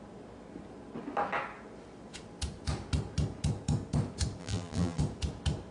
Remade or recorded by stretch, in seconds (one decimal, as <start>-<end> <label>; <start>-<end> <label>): 0.0-4.4 recorded; 4.4-5.0 remade; 5.0-5.7 recorded